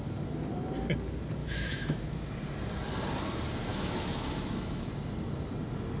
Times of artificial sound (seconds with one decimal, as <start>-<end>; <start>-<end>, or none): 1.4-2.2; 3.7-4.9